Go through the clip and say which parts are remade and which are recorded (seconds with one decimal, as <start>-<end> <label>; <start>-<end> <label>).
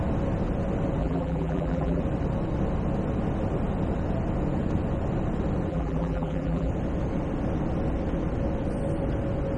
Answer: 0.0-1.0 recorded; 1.0-2.0 remade; 2.0-5.7 recorded; 5.7-6.7 remade; 6.7-9.6 recorded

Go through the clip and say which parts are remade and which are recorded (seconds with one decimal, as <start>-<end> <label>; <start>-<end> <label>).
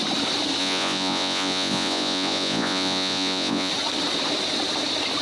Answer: 0.0-0.6 recorded; 0.6-3.7 remade; 3.7-5.2 recorded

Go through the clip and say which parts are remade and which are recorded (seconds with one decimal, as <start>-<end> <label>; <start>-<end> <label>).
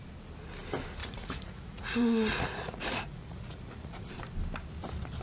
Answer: 0.0-1.0 recorded; 1.0-4.1 remade; 4.1-5.2 recorded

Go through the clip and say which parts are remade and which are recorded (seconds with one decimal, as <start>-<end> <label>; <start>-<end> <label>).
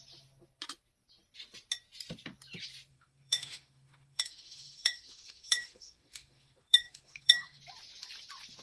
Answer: 0.0-2.9 recorded; 2.9-7.6 remade; 7.6-8.6 recorded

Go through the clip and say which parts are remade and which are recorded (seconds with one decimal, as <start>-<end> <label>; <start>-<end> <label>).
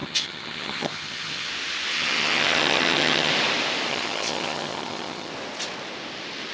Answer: 0.0-1.5 remade; 1.5-1.9 recorded; 1.9-3.3 remade; 3.3-3.9 recorded; 3.9-5.3 remade; 5.3-6.5 recorded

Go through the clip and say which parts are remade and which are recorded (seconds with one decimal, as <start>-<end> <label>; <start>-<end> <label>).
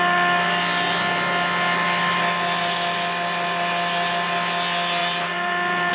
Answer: 0.0-5.0 recorded; 5.0-5.9 remade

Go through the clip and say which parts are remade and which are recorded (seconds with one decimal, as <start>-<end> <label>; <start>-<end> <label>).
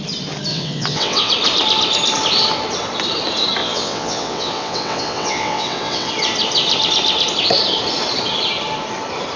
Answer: 0.0-0.5 recorded; 0.5-1.3 remade; 1.3-3.6 recorded; 3.6-6.1 remade; 6.1-9.4 recorded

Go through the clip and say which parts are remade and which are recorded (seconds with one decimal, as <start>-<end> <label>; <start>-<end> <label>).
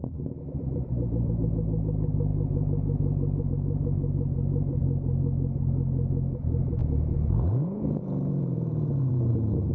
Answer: 0.0-2.3 recorded; 2.3-3.5 remade; 3.5-6.8 recorded; 6.8-9.1 remade; 9.1-9.7 recorded